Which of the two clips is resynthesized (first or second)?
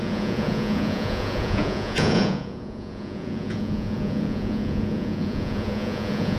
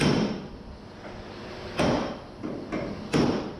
first